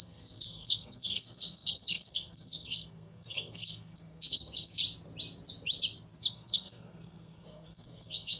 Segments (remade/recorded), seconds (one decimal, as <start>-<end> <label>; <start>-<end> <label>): 0.0-4.8 remade; 4.8-6.3 recorded; 6.3-8.4 remade